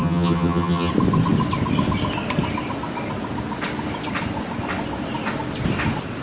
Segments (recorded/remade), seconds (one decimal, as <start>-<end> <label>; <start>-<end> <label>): 0.0-0.9 remade; 0.9-6.2 recorded